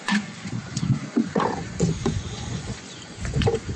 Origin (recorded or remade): remade